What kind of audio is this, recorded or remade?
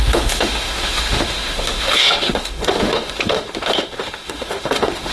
remade